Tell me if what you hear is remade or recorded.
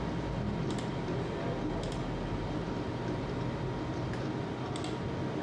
recorded